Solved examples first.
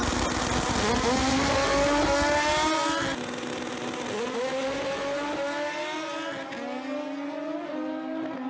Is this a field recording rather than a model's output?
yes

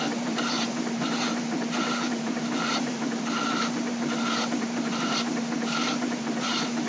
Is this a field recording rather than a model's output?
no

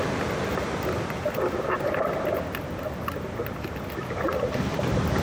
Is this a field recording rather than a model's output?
yes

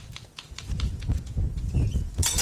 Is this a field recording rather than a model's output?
no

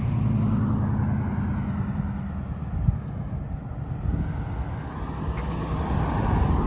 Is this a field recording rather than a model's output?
yes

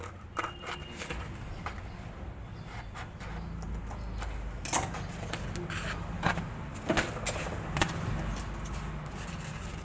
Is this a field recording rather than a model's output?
yes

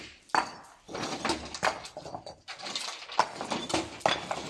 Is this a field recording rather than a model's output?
yes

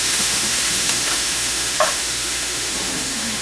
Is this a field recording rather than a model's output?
no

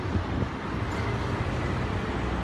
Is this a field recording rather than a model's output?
yes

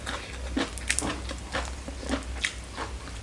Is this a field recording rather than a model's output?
yes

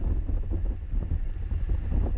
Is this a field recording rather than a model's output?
yes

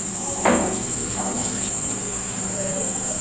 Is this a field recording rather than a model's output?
no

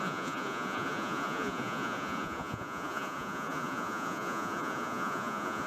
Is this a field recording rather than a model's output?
no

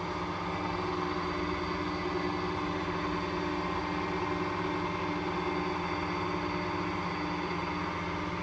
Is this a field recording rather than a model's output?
yes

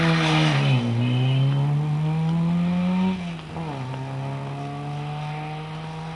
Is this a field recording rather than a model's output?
yes